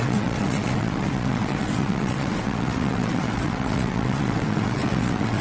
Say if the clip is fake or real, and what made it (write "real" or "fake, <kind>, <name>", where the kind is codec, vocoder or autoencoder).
fake, vocoder, WaveNeXt